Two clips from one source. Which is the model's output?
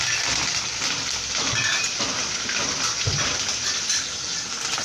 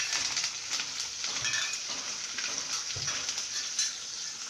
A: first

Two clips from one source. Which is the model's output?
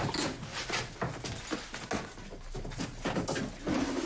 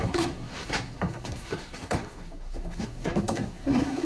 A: second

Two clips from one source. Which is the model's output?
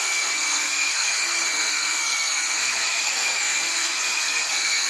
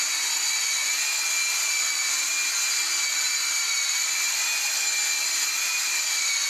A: first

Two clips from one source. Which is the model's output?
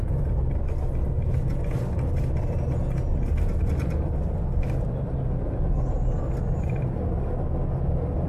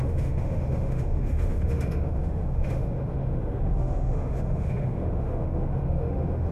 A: second